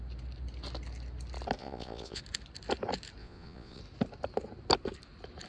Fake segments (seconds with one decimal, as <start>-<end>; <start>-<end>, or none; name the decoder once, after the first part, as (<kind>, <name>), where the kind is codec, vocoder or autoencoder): 1.6-2.2 (vocoder, Vocos); 3.2-3.8